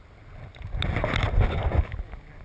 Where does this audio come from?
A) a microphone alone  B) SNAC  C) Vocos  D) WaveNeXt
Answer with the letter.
A